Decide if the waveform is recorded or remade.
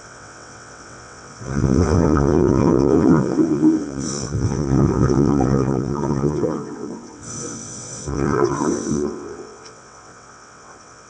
remade